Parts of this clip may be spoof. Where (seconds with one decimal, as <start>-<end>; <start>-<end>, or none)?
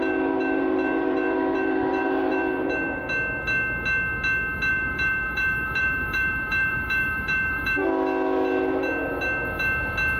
0.0-3.0; 4.7-7.8